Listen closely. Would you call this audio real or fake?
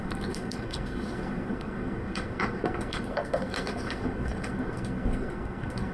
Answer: fake